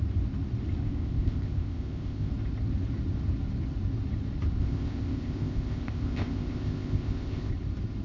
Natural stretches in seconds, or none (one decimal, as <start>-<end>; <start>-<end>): 0.0-0.8; 2.3-4.6; 7.5-8.0